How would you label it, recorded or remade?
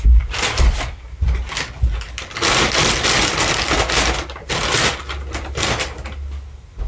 recorded